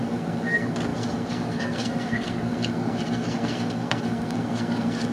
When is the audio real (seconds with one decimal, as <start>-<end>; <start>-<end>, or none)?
none